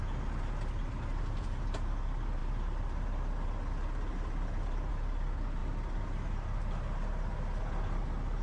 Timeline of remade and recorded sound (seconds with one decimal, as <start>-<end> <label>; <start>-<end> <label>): 0.0-8.4 recorded